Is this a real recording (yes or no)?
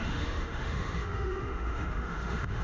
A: no